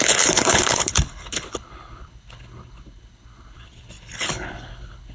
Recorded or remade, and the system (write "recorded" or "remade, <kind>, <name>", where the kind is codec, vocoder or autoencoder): remade, codec, HILCodec